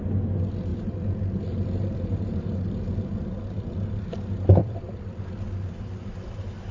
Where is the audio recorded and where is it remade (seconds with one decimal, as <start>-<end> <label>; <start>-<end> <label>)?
0.0-0.7 recorded; 0.7-2.2 remade; 2.2-4.6 recorded; 4.6-5.2 remade; 5.2-6.7 recorded